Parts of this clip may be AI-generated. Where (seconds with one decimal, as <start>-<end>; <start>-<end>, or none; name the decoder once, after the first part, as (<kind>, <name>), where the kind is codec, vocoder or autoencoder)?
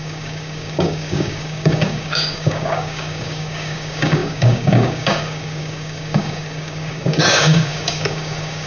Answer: 0.0-8.7 (codec, DAC)